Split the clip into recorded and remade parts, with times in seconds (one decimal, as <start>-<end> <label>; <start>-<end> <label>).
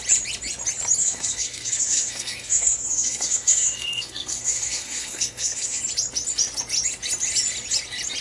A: 0.0-1.0 recorded; 1.0-5.8 remade; 5.8-8.2 recorded